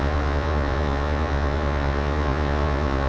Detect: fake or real fake